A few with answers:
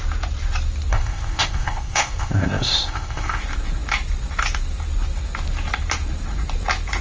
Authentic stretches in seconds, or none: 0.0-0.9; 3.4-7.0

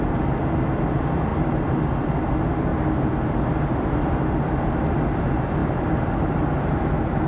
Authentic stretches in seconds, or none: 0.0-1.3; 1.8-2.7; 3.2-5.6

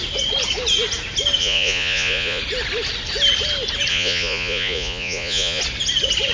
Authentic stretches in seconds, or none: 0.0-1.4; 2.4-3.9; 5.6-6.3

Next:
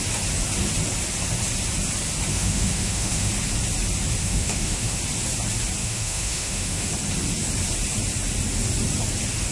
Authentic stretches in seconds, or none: 0.0-2.3; 3.3-4.2; 5.0-5.8; 6.9-9.5

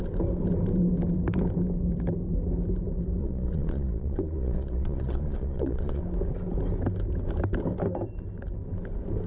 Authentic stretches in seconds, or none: 0.0-3.2; 6.0-9.3

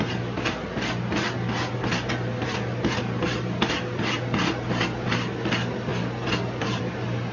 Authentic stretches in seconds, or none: 0.0-7.3

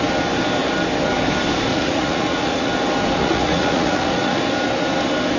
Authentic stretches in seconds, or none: 0.0-1.7; 2.7-3.2; 4.4-5.4